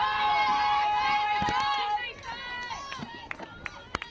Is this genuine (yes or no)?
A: yes